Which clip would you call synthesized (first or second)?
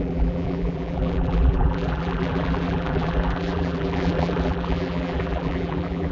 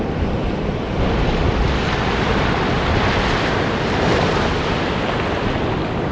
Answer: first